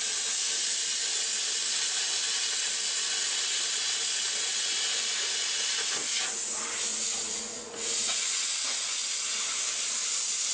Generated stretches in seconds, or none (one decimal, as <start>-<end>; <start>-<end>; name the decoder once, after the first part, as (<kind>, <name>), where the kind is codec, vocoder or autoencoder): 6.9-8.8 (vocoder, Vocos)